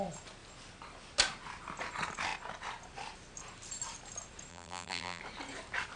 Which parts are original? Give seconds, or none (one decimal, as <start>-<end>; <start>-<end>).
0.0-4.5; 5.2-6.0